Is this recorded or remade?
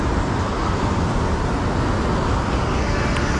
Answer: recorded